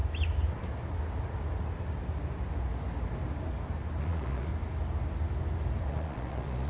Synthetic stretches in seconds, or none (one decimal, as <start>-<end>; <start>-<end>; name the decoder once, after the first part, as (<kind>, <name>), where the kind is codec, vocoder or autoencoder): 4.0-4.5 (vocoder, Vocos); 5.9-6.7